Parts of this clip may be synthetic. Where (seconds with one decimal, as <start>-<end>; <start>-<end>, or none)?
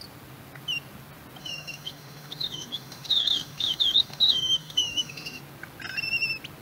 1.4-5.4